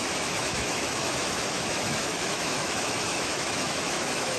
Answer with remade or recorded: remade